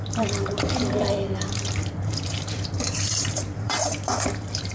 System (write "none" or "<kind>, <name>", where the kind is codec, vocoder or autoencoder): vocoder, BigVGAN v2